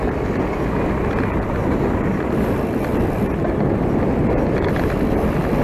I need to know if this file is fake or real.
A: real